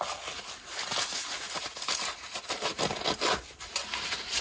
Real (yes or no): yes